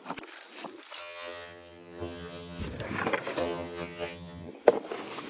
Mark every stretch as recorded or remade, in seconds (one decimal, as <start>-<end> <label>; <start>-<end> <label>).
0.0-1.0 recorded; 1.0-2.6 remade; 2.6-3.4 recorded; 3.4-4.5 remade; 4.5-5.3 recorded